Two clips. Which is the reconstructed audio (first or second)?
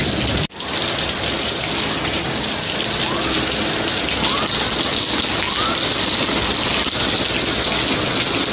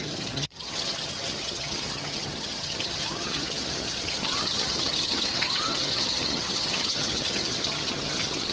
second